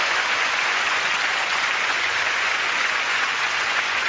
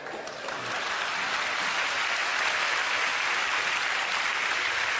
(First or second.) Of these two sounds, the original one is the second